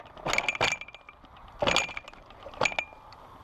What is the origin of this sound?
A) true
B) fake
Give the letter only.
A